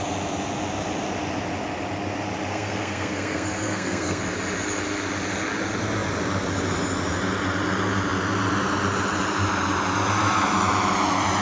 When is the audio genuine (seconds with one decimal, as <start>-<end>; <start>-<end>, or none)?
0.0-2.5; 4.2-11.4